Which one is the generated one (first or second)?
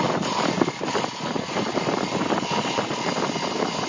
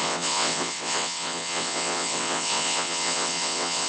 second